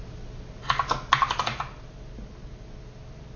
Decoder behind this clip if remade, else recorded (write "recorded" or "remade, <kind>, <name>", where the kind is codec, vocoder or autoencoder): recorded